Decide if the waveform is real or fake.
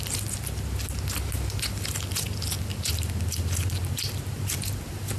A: real